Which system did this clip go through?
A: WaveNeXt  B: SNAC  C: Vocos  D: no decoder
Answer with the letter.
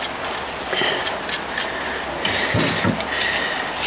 D